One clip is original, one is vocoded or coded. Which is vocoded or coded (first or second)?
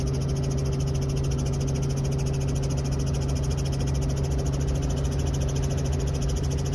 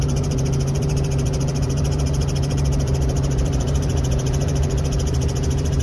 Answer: second